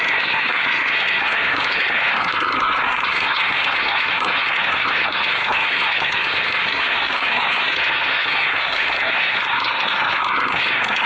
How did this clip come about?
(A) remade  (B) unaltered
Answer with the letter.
A